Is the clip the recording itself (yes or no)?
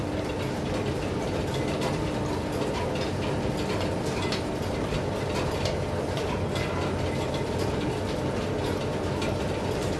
yes